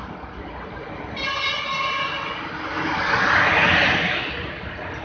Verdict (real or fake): real